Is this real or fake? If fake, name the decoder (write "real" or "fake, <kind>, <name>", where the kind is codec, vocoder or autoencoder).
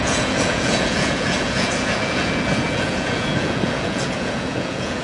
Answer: fake, vocoder, Vocos